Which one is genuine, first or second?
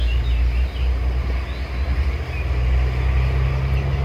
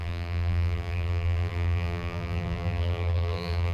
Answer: first